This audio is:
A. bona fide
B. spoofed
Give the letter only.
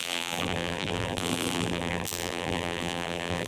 B